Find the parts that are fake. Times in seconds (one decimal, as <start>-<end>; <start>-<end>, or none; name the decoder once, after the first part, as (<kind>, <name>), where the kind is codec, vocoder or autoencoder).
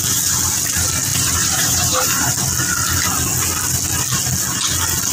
1.1-2.3 (vocoder, BigVGAN v2)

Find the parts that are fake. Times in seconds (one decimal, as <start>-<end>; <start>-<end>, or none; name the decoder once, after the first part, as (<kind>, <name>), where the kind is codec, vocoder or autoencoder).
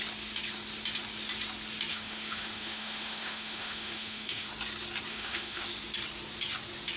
1.9-4.5 (autoencoder, DAC-VAE); 5.1-5.6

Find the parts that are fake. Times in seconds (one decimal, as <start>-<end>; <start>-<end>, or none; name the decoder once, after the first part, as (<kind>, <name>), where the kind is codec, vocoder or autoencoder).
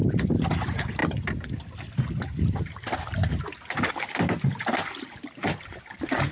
none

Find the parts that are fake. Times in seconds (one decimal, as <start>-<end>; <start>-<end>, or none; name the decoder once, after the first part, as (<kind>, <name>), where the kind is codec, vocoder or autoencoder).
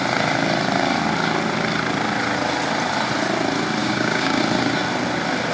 3.8-4.4 (codec, DAC)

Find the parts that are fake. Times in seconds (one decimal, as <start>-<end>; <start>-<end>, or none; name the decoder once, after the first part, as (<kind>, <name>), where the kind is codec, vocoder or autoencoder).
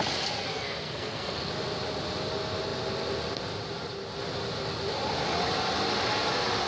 0.5-1.5 (codec, SNAC)